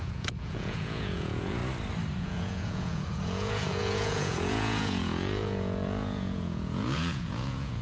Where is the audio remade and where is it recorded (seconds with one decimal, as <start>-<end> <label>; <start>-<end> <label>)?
0.0-1.6 remade; 1.6-2.2 recorded; 2.2-7.8 remade